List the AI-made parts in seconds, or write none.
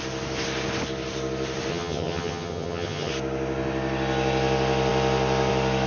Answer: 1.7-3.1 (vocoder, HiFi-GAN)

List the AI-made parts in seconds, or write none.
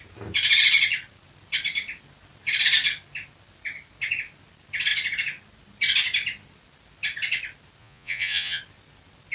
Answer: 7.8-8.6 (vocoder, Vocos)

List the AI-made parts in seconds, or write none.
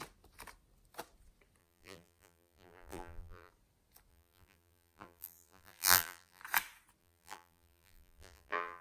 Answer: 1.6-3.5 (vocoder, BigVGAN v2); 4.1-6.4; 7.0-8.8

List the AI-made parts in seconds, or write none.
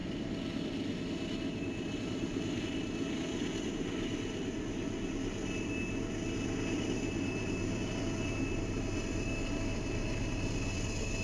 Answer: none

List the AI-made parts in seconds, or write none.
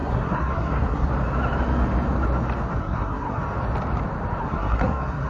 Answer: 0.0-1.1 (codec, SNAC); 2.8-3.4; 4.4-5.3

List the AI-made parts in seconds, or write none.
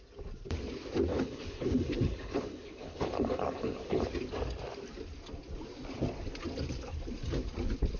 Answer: 1.1-4.0 (codec, HILCodec)